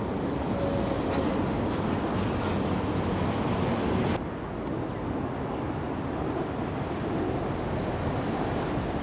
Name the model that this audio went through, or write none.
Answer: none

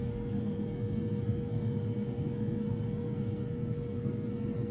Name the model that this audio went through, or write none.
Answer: codec, SNAC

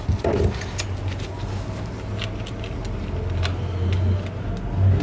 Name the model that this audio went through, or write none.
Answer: none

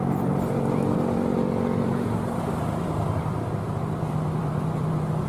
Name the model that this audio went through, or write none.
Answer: vocoder, BigVGAN v2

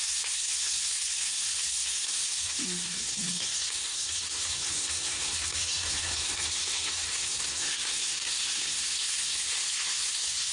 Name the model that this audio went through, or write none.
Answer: codec, SNAC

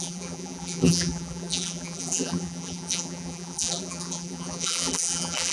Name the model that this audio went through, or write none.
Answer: vocoder, BigVGAN v2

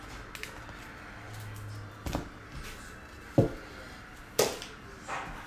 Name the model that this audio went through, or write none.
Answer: none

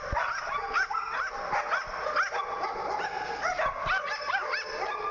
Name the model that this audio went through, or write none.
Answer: none